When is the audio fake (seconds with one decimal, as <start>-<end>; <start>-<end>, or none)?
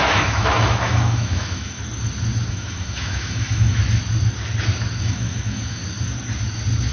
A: 0.0-1.8; 2.5-3.8; 5.0-5.8